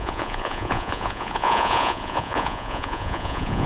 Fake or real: fake